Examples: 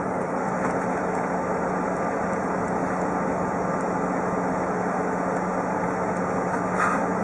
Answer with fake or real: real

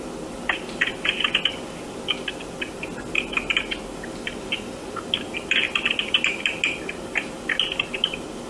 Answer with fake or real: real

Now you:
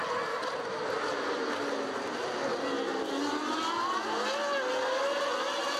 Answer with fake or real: real